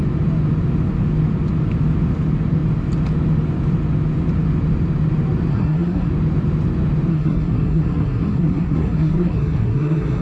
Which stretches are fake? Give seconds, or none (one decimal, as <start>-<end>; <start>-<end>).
5.5-6.1; 7.1-10.2